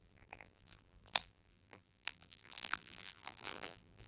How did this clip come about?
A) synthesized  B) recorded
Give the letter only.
A